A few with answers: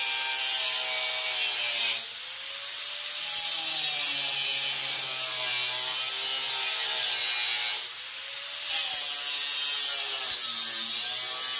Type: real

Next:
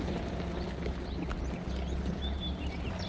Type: real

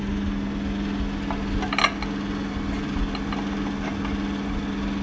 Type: real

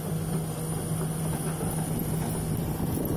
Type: real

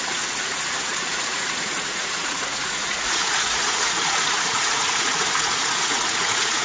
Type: fake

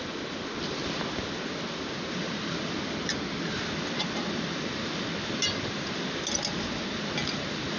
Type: real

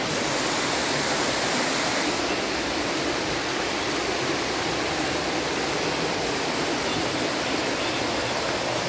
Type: real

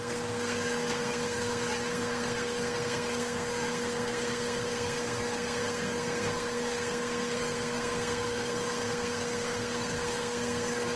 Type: fake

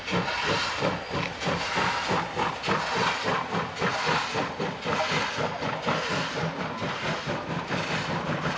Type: real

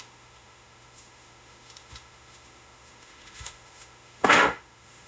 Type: fake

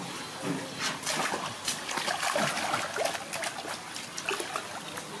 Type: real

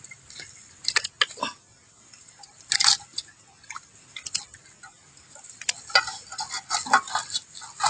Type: real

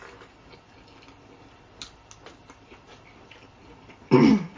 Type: real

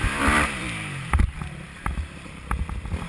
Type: fake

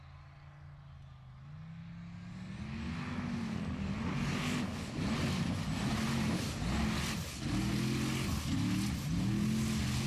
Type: real